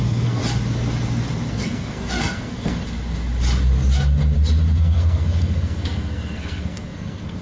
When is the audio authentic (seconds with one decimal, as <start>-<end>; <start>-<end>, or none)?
0.4-1.5; 2.8-4.8